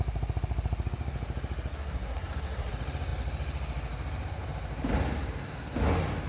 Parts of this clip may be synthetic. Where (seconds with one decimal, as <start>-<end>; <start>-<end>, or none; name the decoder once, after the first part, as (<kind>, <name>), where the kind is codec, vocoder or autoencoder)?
1.7-2.7 (codec, SNAC)